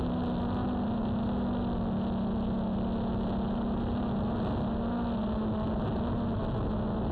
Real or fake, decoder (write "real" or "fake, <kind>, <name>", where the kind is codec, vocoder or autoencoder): real